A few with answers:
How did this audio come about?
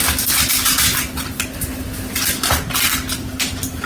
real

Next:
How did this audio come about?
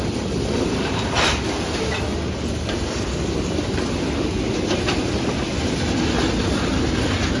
real